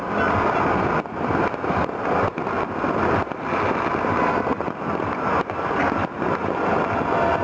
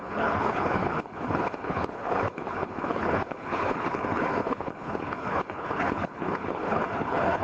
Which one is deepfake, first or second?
second